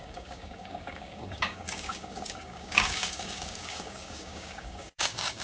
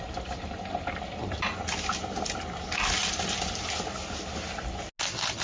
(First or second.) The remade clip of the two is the first